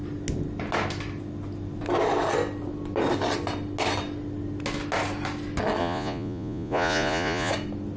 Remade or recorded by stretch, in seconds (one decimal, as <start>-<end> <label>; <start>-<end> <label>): 0.0-5.8 recorded; 5.8-7.5 remade; 7.5-8.0 recorded